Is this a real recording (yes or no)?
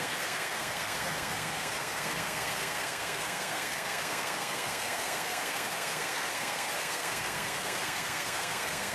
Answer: no